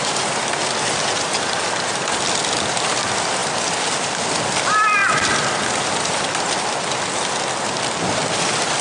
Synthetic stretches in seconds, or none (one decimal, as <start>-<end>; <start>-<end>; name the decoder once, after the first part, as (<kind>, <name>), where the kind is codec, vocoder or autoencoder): none

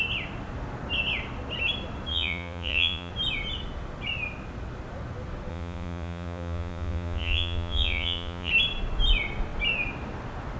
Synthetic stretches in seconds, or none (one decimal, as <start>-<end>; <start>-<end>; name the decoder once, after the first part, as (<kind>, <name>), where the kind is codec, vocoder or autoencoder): 2.1-3.1 (vocoder, Vocos); 5.5-8.5

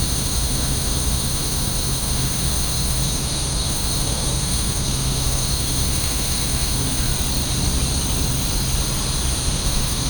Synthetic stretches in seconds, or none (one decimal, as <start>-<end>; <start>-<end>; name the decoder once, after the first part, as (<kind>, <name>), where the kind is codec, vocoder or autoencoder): 0.0-7.1 (autoencoder, DAC-VAE); 9.5-10.1